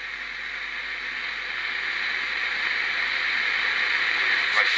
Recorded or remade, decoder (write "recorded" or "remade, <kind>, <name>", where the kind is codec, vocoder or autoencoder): recorded